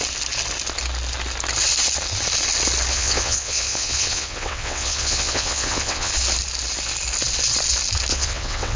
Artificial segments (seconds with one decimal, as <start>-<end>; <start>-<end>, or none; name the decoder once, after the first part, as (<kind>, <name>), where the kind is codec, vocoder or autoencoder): 2.9-6.1 (vocoder, WaveNeXt); 8.1-8.8